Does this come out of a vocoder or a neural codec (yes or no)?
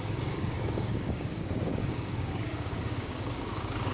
yes